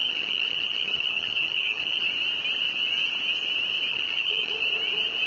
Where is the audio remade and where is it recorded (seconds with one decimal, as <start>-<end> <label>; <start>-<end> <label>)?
0.0-2.1 remade; 2.1-3.9 recorded; 3.9-4.5 remade; 4.5-5.3 recorded